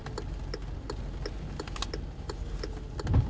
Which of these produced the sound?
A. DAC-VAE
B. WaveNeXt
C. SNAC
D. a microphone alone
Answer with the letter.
D